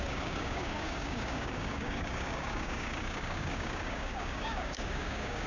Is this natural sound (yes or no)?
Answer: no